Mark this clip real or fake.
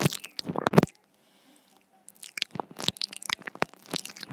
real